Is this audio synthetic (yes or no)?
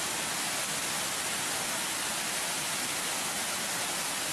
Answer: no